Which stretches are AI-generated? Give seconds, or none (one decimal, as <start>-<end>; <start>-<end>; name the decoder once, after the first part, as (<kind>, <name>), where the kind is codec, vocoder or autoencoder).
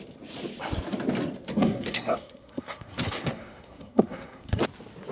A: 1.5-4.6 (codec, SNAC)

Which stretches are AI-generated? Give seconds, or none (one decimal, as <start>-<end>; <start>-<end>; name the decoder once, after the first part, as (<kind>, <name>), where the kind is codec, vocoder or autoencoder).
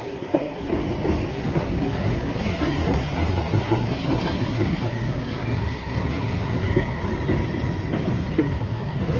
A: 0.0-0.7 (codec, SNAC); 1.3-7.1; 8.3-9.2